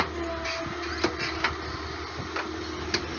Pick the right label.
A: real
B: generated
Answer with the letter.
A